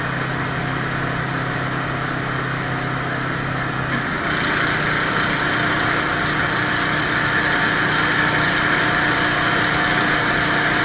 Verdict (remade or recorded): recorded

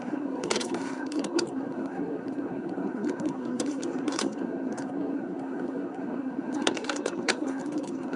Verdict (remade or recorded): remade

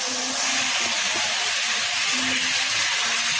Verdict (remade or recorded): recorded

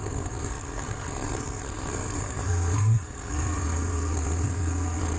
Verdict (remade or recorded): remade